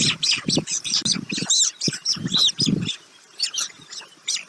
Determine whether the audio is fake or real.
real